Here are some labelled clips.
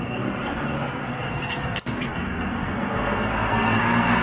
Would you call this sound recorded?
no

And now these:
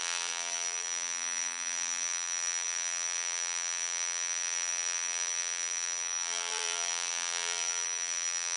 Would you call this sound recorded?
no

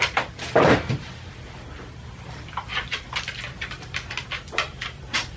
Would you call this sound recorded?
no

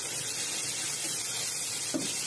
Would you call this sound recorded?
yes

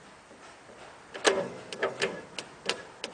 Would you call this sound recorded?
yes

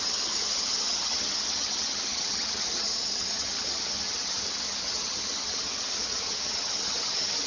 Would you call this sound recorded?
no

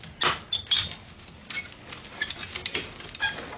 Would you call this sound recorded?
yes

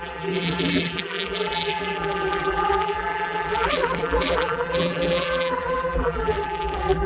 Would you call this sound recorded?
no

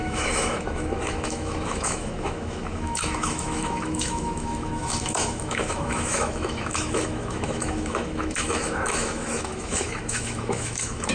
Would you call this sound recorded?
no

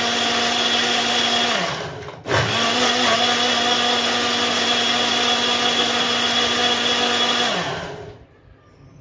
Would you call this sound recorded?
yes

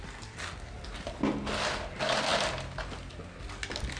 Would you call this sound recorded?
yes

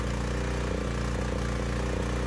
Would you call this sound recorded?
yes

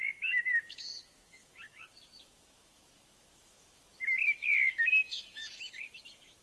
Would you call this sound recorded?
no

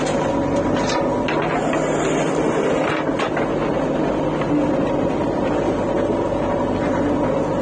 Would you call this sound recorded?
yes